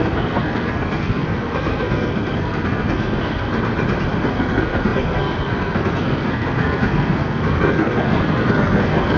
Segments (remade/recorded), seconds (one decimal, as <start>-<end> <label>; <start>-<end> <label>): 0.0-3.5 remade; 3.5-4.3 recorded; 4.3-9.2 remade